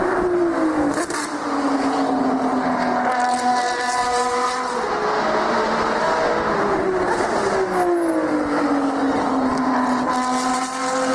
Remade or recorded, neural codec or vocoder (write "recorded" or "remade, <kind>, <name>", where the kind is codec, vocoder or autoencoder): recorded